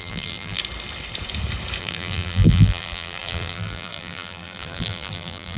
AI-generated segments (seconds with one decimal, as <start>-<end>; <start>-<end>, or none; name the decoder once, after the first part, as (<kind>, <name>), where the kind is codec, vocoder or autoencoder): 0.0-0.6 (vocoder, BigVGAN v2); 1.8-5.6